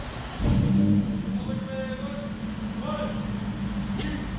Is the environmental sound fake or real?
real